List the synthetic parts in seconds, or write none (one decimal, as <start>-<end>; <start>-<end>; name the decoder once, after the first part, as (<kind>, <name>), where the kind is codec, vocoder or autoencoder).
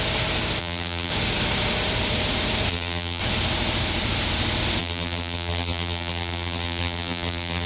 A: 0.6-1.1 (vocoder, BigVGAN v2); 2.7-3.2; 4.8-7.7